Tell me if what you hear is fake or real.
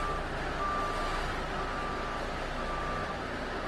real